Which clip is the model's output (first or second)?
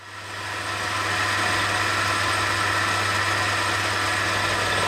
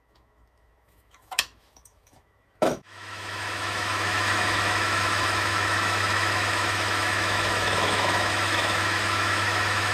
second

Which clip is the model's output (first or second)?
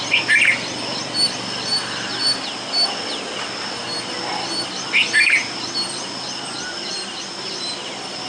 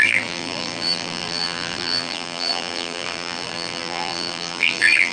second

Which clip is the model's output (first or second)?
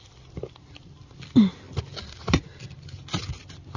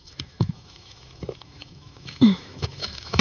second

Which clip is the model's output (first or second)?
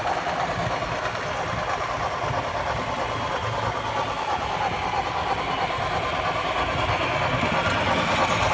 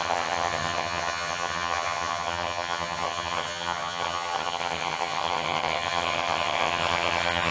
second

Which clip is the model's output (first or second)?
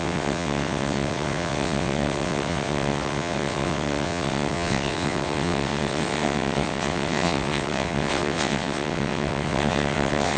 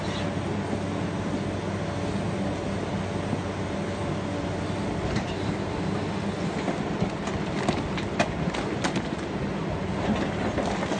first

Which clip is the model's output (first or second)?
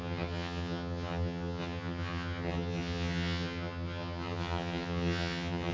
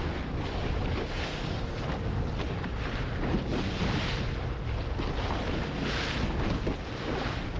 first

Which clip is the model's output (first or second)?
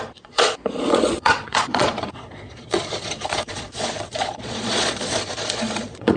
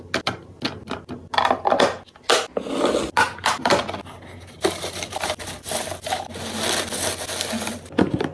first